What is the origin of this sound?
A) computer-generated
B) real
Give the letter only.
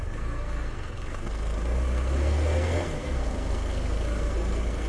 A